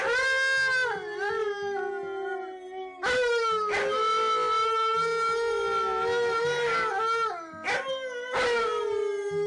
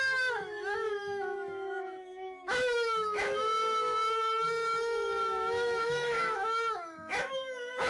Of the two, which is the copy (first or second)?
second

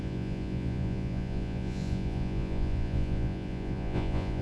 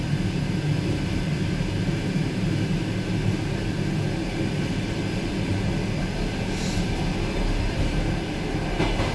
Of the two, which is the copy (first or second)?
first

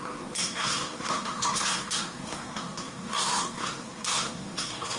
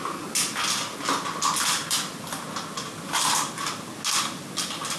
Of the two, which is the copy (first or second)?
first